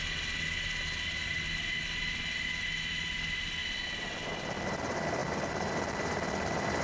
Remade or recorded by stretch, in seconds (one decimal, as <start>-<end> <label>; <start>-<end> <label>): 0.0-1.1 recorded; 1.1-2.2 remade; 2.2-3.6 recorded; 3.6-4.3 remade; 4.3-5.2 recorded; 5.2-5.7 remade; 5.7-6.8 recorded